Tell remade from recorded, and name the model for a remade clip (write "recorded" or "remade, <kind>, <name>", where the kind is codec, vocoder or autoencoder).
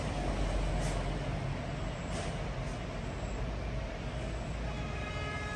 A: recorded